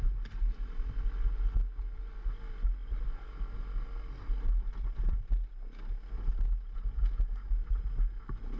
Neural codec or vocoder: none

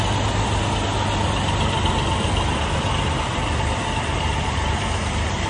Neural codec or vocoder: none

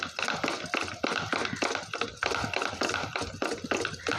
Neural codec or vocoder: none